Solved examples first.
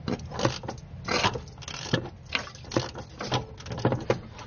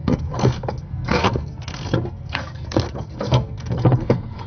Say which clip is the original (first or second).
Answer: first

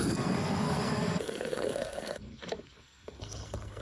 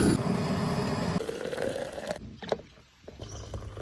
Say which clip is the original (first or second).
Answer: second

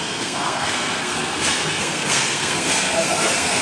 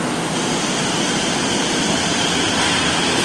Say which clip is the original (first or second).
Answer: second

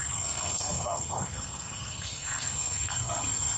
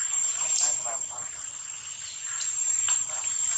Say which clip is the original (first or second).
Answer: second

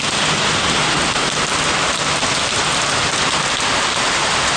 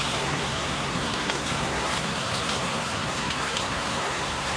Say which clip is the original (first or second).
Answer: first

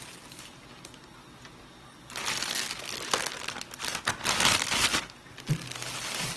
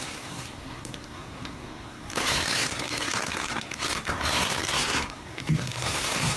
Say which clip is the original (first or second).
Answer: first